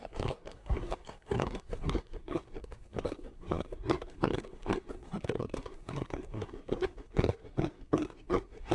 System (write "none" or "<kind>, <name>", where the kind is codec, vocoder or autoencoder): codec, SNAC